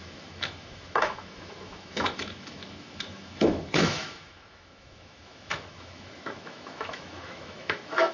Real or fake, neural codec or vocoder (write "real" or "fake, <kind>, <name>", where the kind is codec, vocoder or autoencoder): fake, autoencoder, DAC-VAE